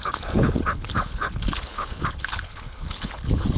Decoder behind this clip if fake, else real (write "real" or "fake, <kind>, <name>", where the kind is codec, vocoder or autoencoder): fake, codec, HILCodec